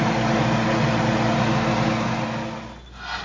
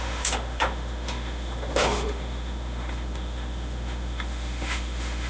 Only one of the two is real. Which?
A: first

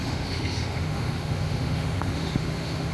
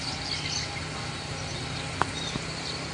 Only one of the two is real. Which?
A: second